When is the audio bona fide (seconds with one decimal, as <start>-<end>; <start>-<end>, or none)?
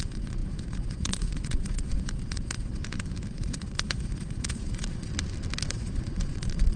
2.8-3.3; 5.1-5.7